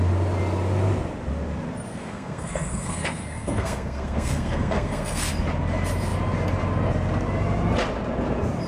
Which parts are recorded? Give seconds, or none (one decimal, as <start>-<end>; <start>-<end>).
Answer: 0.0-1.9; 5.3-8.7